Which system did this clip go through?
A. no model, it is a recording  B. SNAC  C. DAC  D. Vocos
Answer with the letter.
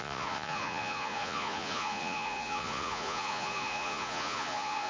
D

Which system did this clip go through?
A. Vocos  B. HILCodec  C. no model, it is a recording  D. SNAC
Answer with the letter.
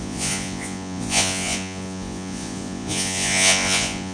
A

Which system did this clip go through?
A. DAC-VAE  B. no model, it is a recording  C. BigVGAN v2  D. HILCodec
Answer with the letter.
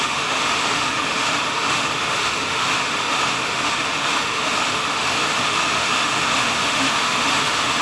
A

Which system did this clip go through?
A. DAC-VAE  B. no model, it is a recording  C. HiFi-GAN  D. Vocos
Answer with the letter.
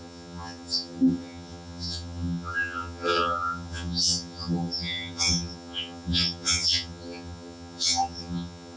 C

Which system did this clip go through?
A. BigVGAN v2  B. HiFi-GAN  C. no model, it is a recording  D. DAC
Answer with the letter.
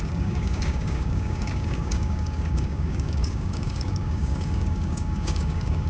D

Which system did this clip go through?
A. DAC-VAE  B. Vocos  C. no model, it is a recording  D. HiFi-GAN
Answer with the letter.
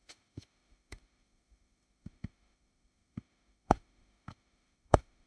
A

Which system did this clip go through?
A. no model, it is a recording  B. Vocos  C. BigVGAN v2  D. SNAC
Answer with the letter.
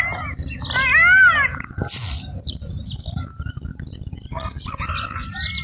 A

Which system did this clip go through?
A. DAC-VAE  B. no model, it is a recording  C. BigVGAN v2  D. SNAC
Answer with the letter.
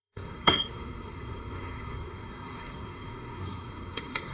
D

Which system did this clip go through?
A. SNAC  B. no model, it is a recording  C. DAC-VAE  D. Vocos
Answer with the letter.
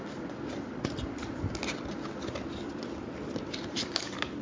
B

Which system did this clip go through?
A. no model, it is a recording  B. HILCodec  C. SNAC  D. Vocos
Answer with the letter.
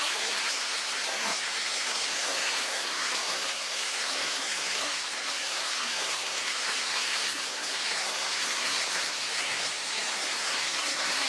C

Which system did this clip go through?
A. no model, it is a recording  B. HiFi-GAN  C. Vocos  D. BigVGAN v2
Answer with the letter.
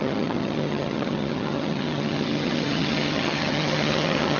B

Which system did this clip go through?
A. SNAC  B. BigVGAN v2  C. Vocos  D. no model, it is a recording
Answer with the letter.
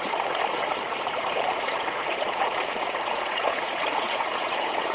C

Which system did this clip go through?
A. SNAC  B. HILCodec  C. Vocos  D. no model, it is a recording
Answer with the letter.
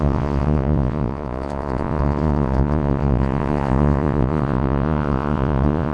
C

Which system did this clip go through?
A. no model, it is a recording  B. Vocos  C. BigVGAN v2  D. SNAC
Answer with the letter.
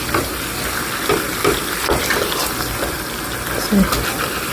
A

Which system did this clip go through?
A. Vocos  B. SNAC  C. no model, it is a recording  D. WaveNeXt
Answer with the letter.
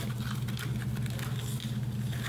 C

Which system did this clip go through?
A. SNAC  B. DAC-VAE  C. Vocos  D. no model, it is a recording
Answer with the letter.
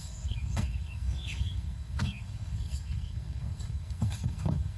A